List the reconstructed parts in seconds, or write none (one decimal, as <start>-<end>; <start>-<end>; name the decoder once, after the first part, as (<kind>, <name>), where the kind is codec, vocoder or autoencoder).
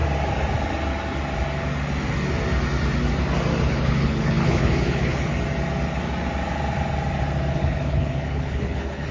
3.6-5.3 (codec, HILCodec); 7.5-9.1